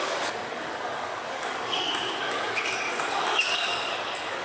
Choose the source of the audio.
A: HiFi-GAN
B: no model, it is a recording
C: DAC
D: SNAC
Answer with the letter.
C